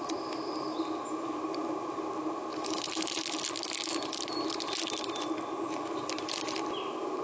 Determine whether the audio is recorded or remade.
recorded